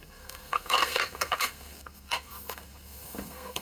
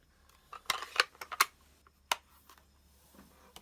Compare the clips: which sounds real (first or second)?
second